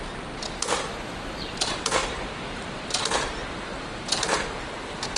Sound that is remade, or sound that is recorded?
recorded